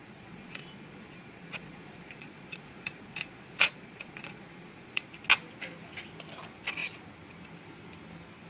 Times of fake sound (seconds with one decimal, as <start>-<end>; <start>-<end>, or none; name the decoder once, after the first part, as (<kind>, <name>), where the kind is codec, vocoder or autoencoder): 0.0-5.1 (vocoder, Vocos)